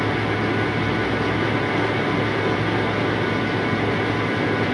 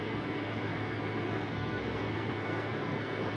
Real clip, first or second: first